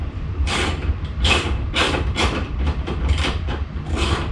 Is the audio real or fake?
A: fake